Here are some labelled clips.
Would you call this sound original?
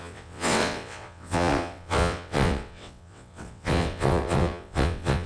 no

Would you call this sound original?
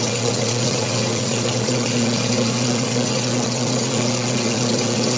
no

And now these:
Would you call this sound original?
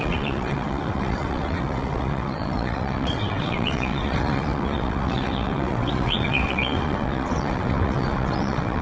no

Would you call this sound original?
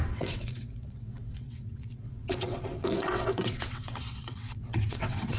no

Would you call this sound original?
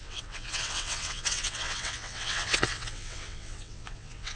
no